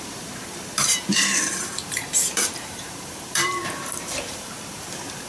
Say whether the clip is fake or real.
fake